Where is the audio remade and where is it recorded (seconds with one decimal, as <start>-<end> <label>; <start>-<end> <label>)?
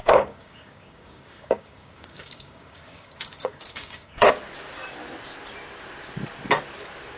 0.0-4.3 remade; 4.3-7.2 recorded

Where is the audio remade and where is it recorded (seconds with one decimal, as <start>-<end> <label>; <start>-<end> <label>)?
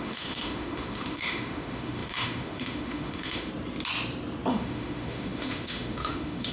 0.0-3.5 remade; 3.5-4.5 recorded; 4.5-6.5 remade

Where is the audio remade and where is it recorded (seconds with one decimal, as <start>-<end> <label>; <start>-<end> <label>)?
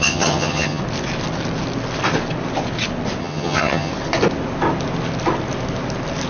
0.0-0.8 remade; 0.8-3.2 recorded; 3.2-3.9 remade; 3.9-6.3 recorded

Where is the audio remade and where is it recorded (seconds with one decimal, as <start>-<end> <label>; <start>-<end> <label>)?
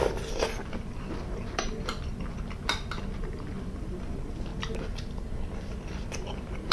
0.0-4.5 remade; 4.5-5.2 recorded; 5.2-6.7 remade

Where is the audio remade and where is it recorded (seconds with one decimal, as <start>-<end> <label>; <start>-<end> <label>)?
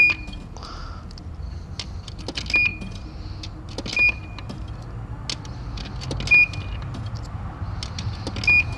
0.0-8.8 recorded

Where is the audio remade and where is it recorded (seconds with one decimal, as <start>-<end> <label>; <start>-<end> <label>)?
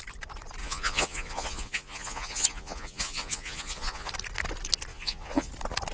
0.0-0.6 recorded; 0.6-4.1 remade; 4.1-4.9 recorded; 4.9-5.5 remade; 5.5-5.9 recorded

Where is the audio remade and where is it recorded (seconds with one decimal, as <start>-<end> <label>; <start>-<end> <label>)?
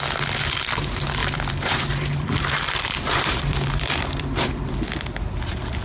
0.0-1.2 recorded; 1.2-4.7 remade; 4.7-5.8 recorded